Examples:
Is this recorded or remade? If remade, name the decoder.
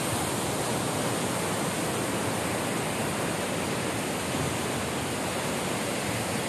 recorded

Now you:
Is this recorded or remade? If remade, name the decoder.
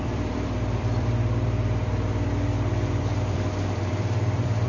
remade, vocoder, BigVGAN v2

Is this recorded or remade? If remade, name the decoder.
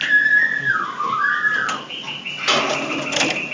recorded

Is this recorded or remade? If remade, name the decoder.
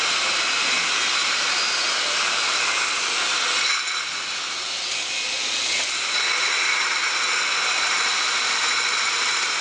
recorded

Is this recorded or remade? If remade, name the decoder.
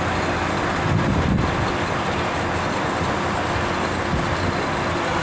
recorded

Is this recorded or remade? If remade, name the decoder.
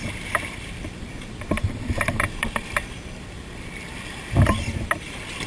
remade, vocoder, BigVGAN v2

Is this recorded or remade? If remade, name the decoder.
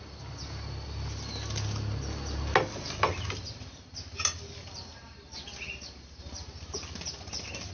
recorded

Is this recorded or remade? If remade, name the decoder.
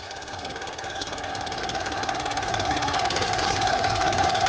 remade, codec, SNAC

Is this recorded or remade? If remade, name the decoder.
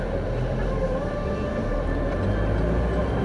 recorded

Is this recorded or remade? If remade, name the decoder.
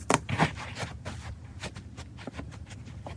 remade, vocoder, BigVGAN v2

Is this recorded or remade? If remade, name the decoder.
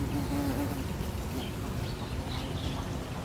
recorded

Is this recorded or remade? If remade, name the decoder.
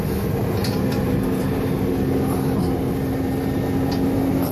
recorded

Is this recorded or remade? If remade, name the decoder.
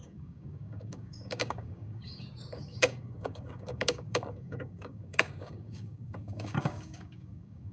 remade, codec, DAC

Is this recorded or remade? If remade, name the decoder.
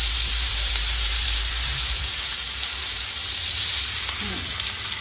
remade, vocoder, BigVGAN v2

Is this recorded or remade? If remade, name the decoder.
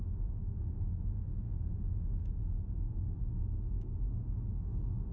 remade, autoencoder, DAC-VAE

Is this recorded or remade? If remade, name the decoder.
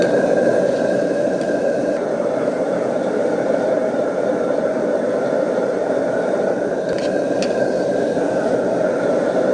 remade, vocoder, BigVGAN v2